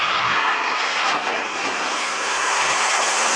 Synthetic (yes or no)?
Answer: yes